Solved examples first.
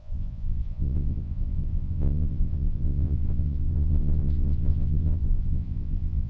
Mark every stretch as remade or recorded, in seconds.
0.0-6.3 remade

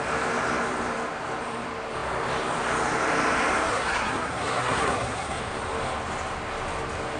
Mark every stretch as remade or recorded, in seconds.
0.0-3.7 recorded; 3.7-5.4 remade; 5.4-7.2 recorded

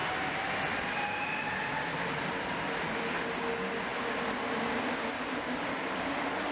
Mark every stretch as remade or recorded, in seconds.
0.0-3.9 recorded; 3.9-6.0 remade; 6.0-6.5 recorded

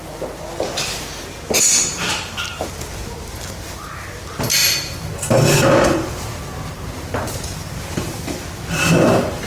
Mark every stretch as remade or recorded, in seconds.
0.0-9.5 recorded